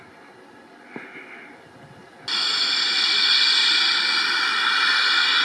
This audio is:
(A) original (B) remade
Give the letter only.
A